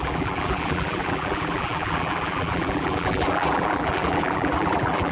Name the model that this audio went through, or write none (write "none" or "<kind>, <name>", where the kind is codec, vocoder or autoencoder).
vocoder, BigVGAN v2